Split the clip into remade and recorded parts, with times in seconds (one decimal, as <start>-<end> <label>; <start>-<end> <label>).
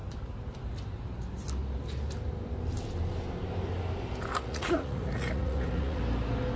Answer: 0.0-4.3 recorded; 4.3-6.0 remade; 6.0-6.6 recorded